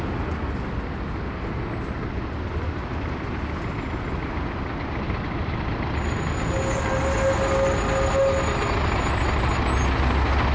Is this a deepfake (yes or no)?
no